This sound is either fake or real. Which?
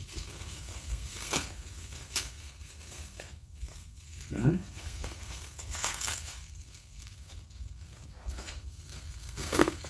fake